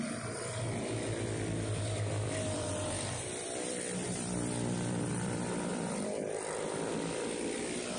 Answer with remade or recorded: remade